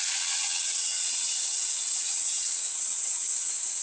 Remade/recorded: remade